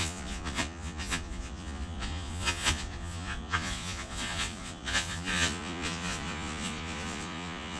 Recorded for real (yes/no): no